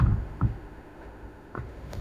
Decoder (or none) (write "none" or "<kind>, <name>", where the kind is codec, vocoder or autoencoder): autoencoder, DAC-VAE